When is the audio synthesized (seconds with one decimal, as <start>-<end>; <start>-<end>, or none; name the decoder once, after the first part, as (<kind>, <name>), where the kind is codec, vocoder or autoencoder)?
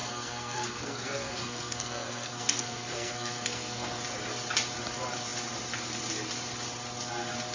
0.0-4.0 (codec, SNAC)